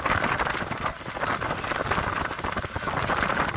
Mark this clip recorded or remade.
recorded